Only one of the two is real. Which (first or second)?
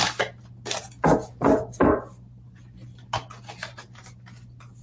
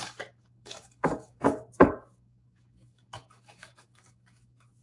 first